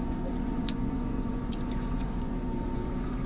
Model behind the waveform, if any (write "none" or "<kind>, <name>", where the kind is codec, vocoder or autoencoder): vocoder, Vocos